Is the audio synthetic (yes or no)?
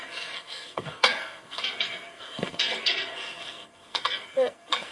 yes